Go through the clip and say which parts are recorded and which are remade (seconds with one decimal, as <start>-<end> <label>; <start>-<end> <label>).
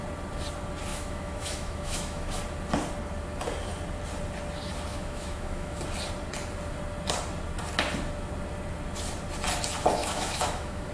0.0-0.9 recorded; 0.9-2.4 remade; 2.4-4.9 recorded; 4.9-5.8 remade; 5.8-10.0 recorded; 10.0-10.9 remade